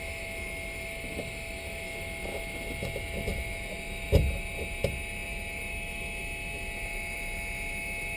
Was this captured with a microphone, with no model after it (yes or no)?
no